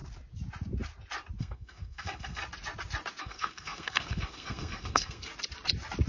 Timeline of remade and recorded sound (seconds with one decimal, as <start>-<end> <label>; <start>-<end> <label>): 0.0-1.4 recorded; 1.4-2.4 remade; 2.4-3.2 recorded; 3.2-5.3 remade; 5.3-6.1 recorded